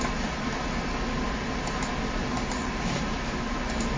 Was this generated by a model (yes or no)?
no